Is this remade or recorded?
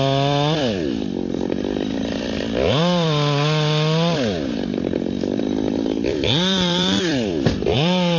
remade